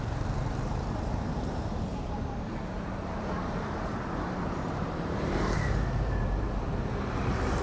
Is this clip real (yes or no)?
no